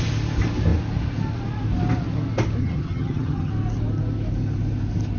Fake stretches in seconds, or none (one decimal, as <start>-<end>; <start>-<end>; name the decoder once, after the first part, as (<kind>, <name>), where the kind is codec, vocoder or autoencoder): 2.6-3.5 (vocoder, HiFi-GAN)

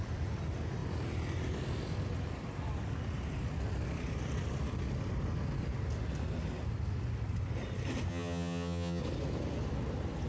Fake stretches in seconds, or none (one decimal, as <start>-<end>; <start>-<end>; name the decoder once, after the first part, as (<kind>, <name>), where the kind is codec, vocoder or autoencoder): 8.1-9.0 (vocoder, HiFi-GAN)

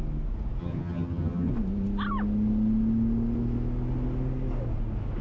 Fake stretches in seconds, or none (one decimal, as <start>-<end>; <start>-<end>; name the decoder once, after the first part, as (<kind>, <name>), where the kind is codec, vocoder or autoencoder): 0.6-1.5 (vocoder, HiFi-GAN)